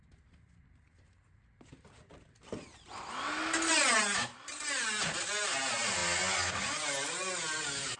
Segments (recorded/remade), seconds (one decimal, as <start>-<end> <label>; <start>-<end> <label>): 0.0-8.0 recorded